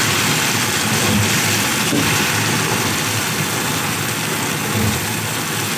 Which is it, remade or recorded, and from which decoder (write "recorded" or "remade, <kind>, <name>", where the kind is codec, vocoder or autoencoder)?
recorded